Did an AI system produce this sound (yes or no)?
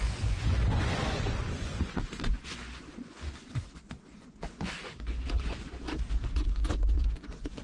yes